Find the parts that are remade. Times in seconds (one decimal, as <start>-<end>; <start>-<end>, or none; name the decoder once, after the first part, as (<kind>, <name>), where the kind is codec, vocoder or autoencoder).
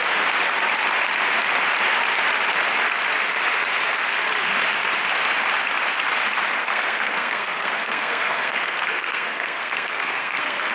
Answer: 6.6-10.7 (codec, SNAC)